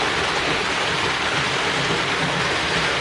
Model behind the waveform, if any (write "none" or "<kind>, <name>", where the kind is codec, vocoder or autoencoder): none